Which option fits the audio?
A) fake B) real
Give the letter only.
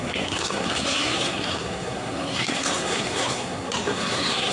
A